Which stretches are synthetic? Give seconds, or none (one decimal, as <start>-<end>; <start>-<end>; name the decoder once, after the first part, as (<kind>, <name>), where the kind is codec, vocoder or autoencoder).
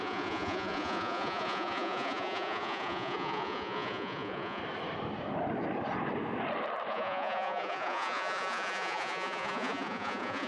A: 0.0-4.6 (vocoder, Vocos); 6.9-10.5